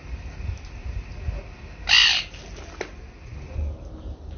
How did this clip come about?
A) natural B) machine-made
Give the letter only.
A